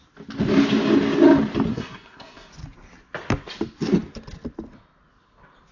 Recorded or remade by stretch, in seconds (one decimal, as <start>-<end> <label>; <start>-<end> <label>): 0.0-1.7 recorded; 1.7-2.5 remade; 2.5-5.7 recorded